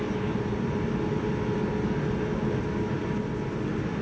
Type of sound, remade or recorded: recorded